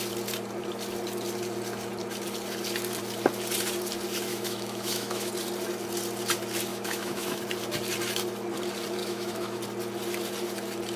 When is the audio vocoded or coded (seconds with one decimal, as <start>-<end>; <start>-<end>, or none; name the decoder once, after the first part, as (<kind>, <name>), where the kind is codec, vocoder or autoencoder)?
4.3-5.3 (autoencoder, DAC-VAE); 6.7-7.4; 9.0-9.6